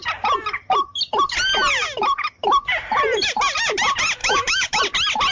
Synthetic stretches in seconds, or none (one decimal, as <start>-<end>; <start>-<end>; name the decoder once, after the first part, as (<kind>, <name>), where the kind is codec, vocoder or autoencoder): 4.2-4.8 (autoencoder, DAC-VAE)